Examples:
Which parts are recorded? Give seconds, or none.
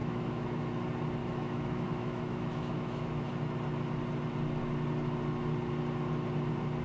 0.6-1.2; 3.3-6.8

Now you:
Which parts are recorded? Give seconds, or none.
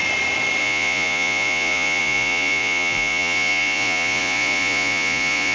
0.0-0.6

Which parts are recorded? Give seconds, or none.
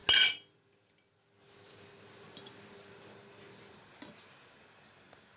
0.0-5.4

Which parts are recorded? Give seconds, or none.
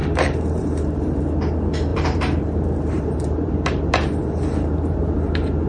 1.2-1.9; 5.3-5.7